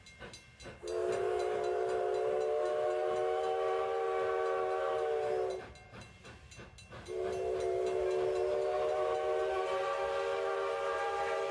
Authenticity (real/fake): real